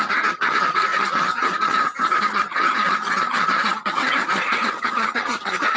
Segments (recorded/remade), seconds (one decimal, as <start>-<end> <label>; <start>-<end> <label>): 0.0-5.8 remade